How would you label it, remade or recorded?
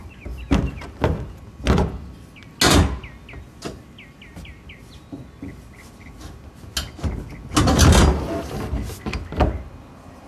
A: recorded